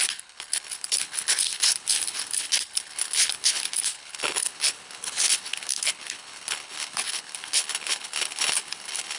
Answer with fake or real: fake